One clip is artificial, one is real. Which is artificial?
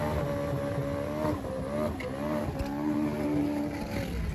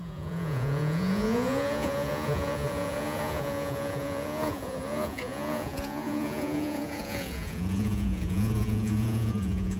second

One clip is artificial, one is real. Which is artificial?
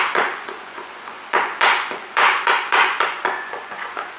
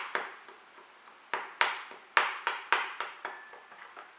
first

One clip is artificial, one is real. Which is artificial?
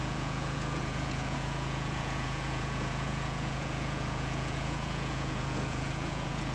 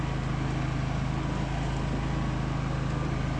first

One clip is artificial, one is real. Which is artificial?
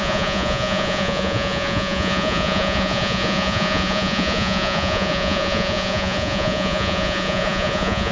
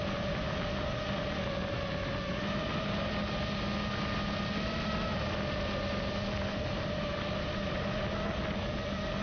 first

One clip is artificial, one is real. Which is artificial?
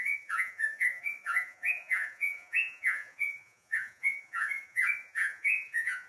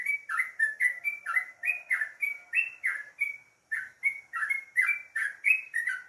first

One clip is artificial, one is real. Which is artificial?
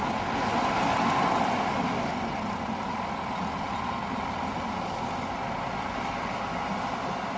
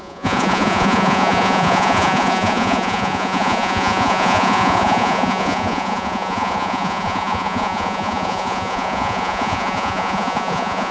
second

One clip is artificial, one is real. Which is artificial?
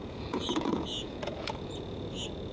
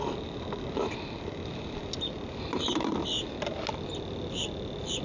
first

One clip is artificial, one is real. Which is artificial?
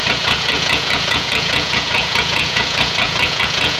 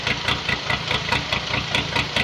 first